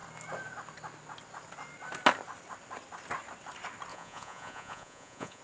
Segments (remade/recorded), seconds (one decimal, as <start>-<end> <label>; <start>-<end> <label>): 0.0-3.9 recorded; 3.9-5.4 remade